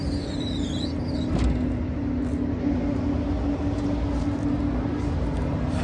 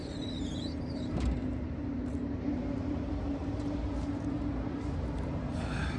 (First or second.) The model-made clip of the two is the second